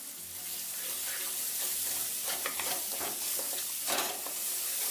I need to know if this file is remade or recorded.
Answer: recorded